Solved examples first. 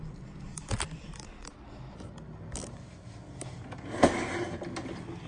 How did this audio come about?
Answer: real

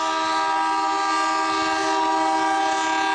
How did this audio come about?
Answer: real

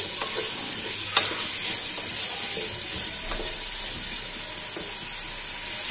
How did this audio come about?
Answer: real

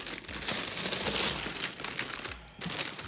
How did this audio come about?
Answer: real